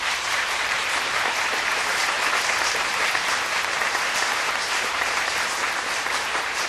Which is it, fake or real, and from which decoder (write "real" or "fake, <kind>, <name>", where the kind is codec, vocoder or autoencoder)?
fake, vocoder, BigVGAN v2